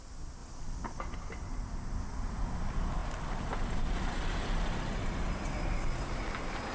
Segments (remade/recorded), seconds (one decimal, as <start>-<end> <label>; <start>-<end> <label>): 0.0-6.7 recorded